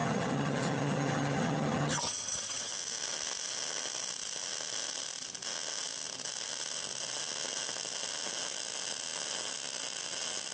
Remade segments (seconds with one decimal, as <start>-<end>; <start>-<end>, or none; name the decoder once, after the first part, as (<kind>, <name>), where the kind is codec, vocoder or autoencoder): 0.0-2.7 (vocoder, HiFi-GAN)